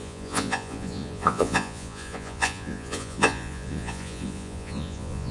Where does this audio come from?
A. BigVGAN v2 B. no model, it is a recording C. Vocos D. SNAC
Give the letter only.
C